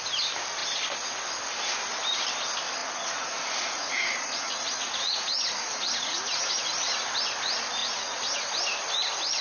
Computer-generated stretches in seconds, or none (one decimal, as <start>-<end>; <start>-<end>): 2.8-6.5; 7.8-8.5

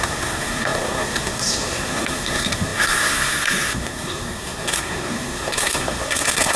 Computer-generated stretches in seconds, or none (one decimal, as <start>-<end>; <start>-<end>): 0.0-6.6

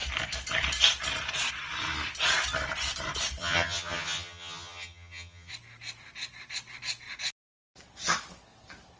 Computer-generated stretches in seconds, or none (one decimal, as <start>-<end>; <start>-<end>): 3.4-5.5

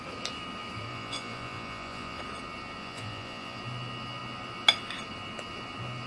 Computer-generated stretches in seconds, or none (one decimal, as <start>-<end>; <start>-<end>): 0.9-2.2; 2.8-3.6